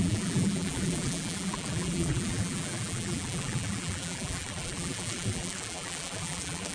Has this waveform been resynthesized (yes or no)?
yes